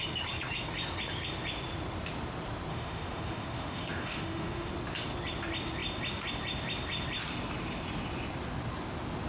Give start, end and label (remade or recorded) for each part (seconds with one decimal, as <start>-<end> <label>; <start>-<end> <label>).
0.0-2.7 recorded; 2.7-4.7 remade; 4.7-9.3 recorded

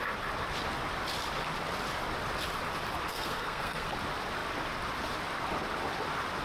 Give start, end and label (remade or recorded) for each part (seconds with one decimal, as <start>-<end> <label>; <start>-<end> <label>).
0.0-3.1 recorded; 3.1-3.9 remade; 3.9-6.4 recorded

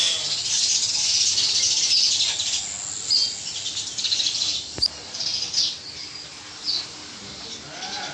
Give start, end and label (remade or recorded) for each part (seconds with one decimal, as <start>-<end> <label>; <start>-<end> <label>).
0.0-5.3 recorded; 5.3-5.9 remade; 5.9-8.1 recorded

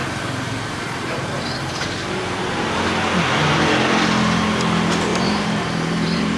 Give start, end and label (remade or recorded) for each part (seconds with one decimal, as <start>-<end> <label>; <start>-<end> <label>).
0.0-3.0 remade; 3.0-5.1 recorded; 5.1-6.4 remade

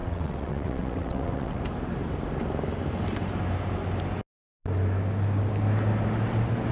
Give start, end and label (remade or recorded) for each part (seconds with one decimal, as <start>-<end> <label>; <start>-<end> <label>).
0.0-1.6 remade; 1.6-6.7 recorded

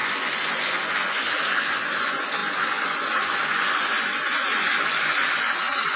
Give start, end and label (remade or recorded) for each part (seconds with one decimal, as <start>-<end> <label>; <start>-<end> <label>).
0.0-6.0 remade

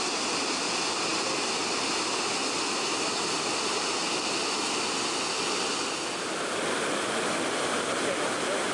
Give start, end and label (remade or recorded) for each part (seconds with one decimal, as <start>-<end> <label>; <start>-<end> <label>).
0.0-8.7 recorded

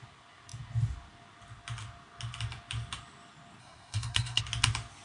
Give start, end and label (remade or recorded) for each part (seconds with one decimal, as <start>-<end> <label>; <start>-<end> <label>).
0.0-3.6 recorded; 3.6-4.4 remade; 4.4-5.0 recorded